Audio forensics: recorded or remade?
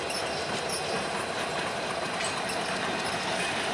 recorded